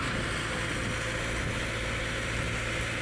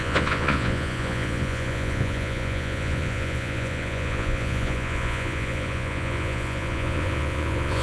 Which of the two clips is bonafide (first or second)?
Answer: first